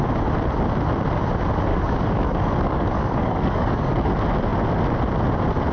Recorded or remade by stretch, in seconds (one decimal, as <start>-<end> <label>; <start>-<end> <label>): 0.0-1.7 recorded; 1.7-4.1 remade; 4.1-5.7 recorded